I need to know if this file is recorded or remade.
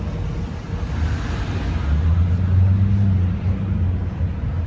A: recorded